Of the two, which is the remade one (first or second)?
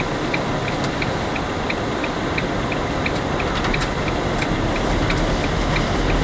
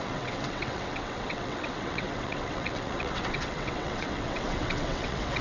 second